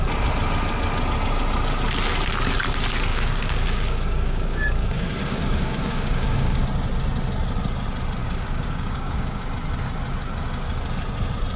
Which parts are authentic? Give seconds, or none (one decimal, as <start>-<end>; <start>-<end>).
0.0-3.1; 6.6-8.2; 9.4-11.6